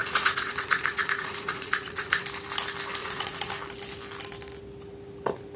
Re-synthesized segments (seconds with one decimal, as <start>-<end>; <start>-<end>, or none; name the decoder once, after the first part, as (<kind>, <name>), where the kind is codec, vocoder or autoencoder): 0.0-2.2 (vocoder, Vocos); 3.0-3.5